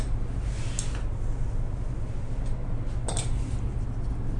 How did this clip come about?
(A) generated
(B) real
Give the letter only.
B